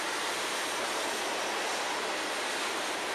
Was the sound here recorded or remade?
recorded